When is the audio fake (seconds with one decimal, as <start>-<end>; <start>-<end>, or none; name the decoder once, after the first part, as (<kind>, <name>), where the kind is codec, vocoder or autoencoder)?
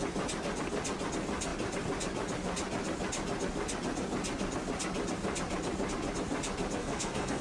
6.8-7.4 (codec, SNAC)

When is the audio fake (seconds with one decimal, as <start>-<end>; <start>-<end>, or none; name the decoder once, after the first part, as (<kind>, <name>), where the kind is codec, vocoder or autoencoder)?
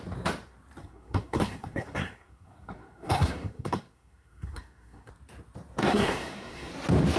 0.8-5.1 (codec, SNAC); 5.9-6.7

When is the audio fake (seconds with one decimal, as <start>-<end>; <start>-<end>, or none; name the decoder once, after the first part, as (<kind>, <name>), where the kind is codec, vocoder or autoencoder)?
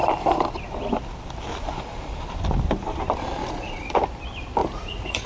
3.4-4.0 (vocoder, Vocos); 4.6-5.3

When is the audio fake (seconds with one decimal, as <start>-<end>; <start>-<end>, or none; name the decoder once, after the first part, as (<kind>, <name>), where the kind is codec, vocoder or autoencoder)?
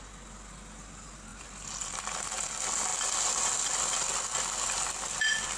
none